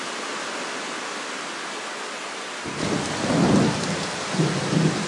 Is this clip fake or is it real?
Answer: real